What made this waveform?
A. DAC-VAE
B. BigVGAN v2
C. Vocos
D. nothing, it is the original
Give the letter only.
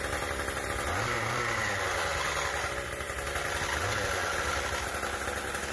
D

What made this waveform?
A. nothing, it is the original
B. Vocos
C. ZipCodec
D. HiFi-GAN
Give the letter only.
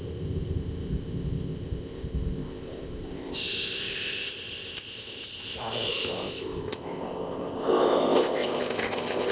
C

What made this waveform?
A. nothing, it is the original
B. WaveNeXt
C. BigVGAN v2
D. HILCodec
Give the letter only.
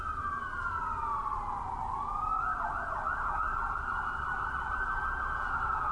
A